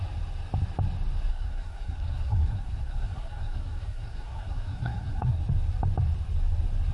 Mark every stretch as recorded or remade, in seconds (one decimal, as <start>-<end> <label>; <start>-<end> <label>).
0.0-1.3 recorded; 1.3-5.4 remade; 5.4-6.9 recorded